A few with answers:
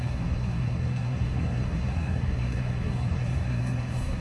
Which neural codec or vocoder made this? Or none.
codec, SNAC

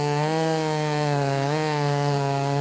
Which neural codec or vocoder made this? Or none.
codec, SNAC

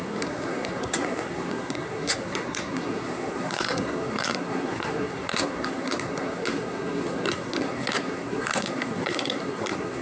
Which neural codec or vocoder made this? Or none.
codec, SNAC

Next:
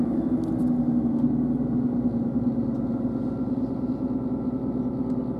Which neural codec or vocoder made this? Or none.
none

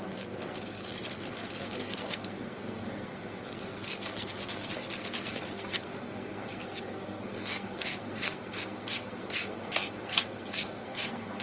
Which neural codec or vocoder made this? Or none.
codec, SNAC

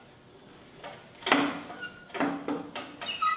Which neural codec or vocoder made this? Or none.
none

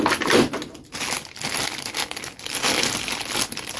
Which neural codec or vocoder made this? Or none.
none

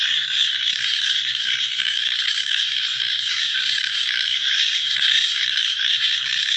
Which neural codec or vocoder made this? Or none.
codec, SNAC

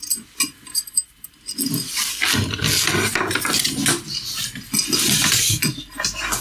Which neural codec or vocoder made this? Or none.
none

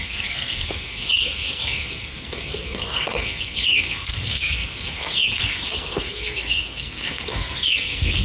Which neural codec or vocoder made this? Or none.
codec, SNAC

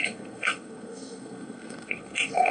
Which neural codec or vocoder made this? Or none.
codec, SNAC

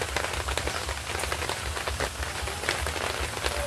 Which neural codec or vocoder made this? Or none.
none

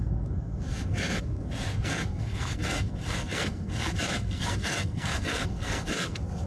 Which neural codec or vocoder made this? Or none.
codec, SNAC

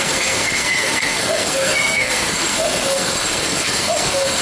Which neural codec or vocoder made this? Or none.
codec, SNAC